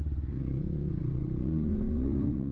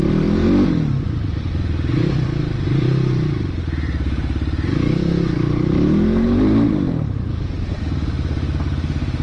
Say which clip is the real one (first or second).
second